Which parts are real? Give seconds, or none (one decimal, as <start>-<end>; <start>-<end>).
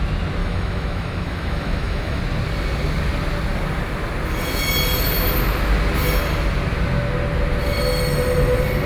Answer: 0.0-0.4; 2.2-8.9